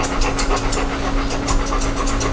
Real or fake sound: real